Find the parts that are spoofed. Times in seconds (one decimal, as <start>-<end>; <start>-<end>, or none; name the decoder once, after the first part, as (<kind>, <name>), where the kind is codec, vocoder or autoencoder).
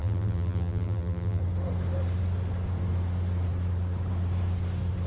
0.0-1.4 (vocoder, BigVGAN v2)